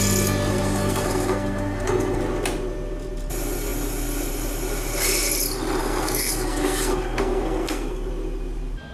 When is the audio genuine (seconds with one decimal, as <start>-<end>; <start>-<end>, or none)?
0.0-0.5; 2.2-5.8; 8.1-8.9